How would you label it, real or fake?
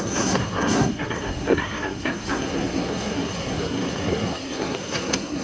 fake